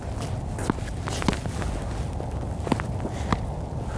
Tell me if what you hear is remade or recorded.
recorded